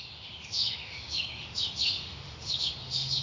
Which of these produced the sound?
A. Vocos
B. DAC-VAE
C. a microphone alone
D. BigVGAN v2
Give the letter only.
B